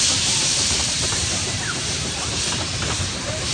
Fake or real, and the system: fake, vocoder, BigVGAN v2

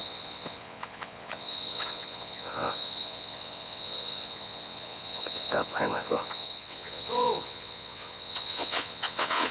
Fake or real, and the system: fake, vocoder, WaveNeXt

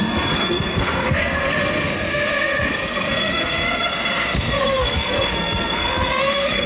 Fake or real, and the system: fake, codec, SNAC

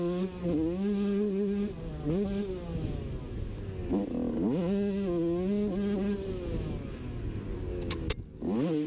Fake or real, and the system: real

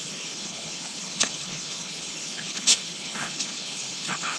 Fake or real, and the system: fake, codec, HILCodec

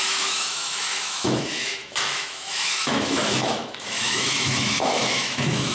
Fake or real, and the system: fake, autoencoder, DAC-VAE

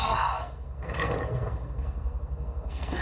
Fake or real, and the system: fake, codec, SNAC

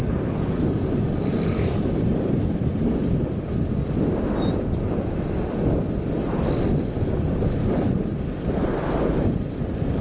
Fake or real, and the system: real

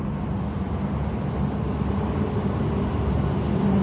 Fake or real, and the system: real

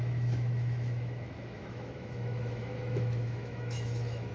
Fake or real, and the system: fake, autoencoder, DAC-VAE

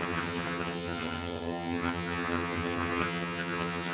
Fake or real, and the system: fake, vocoder, HiFi-GAN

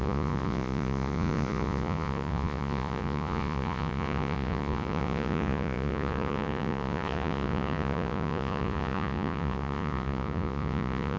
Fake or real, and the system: fake, vocoder, Vocos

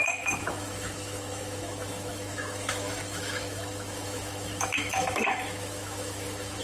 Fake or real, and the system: fake, autoencoder, DAC-VAE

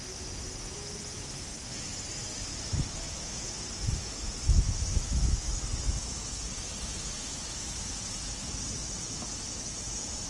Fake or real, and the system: fake, autoencoder, DAC-VAE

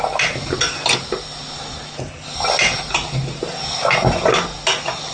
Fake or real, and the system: real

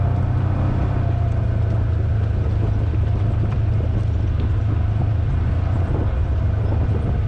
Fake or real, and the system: real